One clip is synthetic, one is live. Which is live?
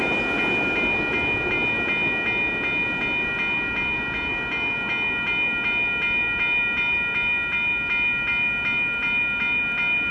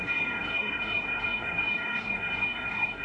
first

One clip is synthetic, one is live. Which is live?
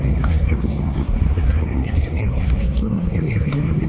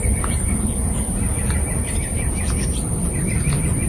second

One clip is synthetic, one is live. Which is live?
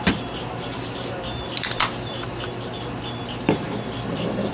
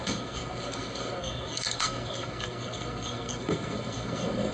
first